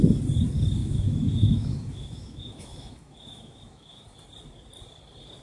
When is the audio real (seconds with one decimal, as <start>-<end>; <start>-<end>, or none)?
0.0-0.8; 4.0-5.4